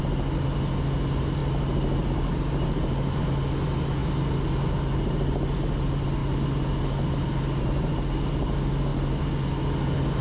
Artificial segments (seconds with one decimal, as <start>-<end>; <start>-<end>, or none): none